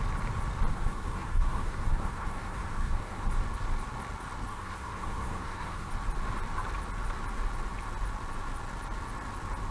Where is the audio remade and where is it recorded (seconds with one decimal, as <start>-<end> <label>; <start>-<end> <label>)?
0.0-0.7 recorded; 0.7-3.3 remade; 3.3-4.5 recorded; 4.5-5.9 remade; 5.9-9.7 recorded